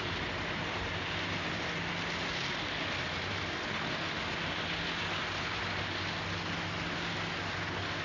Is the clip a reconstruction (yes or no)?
no